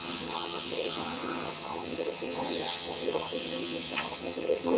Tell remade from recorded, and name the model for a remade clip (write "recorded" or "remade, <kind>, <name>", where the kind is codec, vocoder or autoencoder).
remade, vocoder, HiFi-GAN